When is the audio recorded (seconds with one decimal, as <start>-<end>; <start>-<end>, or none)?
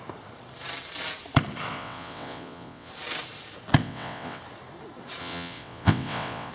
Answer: 0.0-1.7; 2.9-3.8; 4.4-5.2